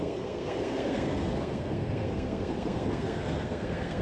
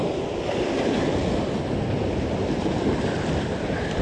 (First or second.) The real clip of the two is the second